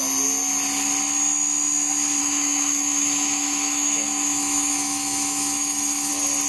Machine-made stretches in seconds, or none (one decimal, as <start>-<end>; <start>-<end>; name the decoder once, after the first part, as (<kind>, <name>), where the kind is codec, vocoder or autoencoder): 2.2-6.1 (autoencoder, DAC-VAE)